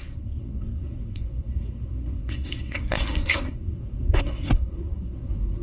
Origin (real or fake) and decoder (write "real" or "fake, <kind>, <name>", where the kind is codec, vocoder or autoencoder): fake, codec, SNAC